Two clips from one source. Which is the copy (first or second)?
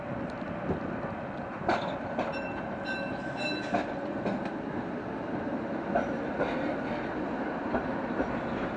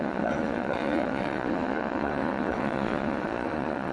second